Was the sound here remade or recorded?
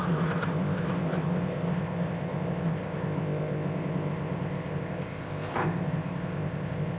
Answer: remade